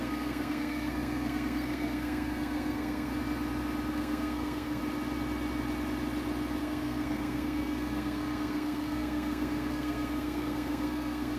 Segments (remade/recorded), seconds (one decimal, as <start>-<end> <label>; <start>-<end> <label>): 0.0-3.1 remade; 3.1-3.9 recorded; 3.9-4.8 remade; 4.8-6.6 recorded; 6.6-11.4 remade